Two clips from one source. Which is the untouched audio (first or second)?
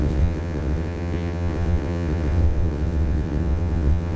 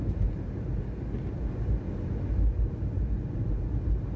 second